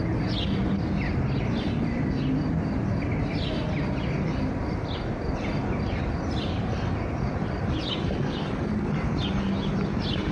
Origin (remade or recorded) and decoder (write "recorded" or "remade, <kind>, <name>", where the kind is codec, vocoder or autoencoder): recorded